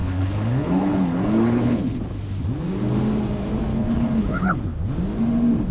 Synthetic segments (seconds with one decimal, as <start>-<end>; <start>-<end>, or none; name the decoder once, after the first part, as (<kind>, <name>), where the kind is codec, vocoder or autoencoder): 0.0-2.0 (codec, HILCodec); 3.7-4.6